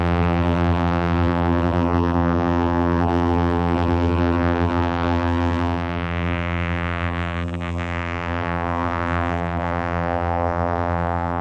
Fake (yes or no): yes